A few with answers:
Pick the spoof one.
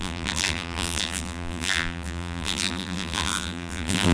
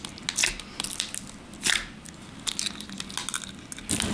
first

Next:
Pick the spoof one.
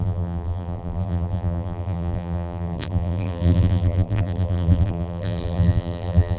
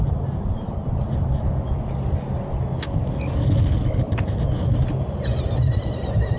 first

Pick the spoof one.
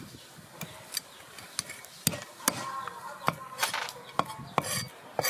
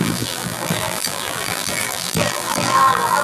second